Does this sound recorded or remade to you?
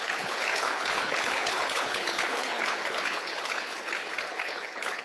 remade